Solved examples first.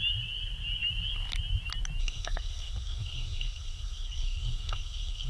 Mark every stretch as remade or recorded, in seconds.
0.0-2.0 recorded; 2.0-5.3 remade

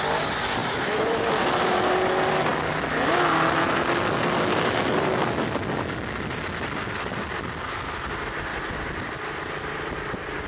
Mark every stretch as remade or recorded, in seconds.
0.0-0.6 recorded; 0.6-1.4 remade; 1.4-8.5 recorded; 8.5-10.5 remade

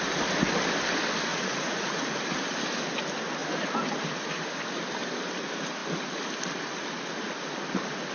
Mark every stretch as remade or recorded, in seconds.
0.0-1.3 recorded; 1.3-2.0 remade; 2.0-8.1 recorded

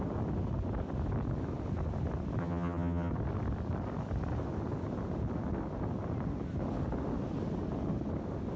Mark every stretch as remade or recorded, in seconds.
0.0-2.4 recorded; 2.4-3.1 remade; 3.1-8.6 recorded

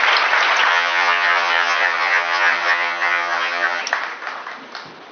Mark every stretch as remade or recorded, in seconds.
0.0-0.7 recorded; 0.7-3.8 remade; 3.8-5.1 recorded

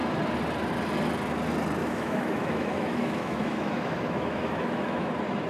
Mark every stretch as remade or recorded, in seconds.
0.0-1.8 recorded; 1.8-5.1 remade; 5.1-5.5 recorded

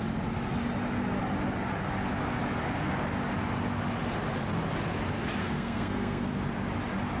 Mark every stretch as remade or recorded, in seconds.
0.0-5.4 recorded; 5.4-6.3 remade; 6.3-7.2 recorded